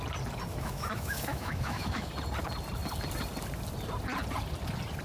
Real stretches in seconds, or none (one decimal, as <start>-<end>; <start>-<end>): 0.0-0.5; 2.1-5.0